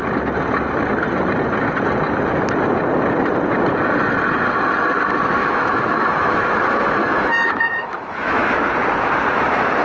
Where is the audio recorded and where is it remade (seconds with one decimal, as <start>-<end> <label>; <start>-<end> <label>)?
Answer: 0.0-5.4 recorded; 5.4-8.5 remade; 8.5-9.8 recorded